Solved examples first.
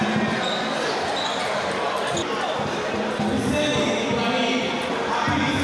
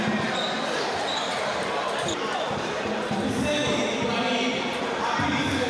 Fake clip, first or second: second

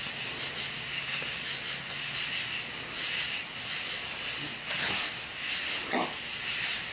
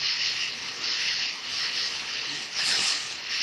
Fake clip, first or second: second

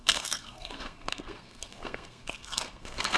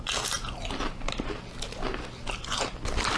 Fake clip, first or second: first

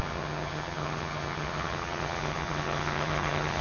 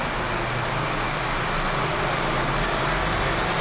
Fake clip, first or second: first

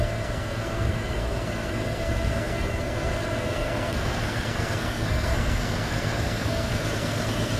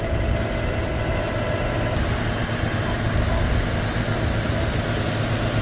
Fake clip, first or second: first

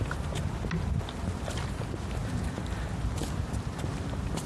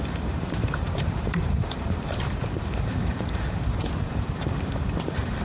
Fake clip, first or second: second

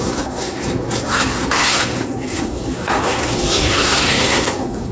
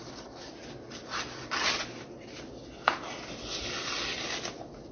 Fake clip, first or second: first